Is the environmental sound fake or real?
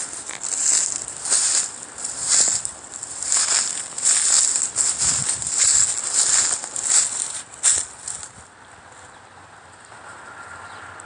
real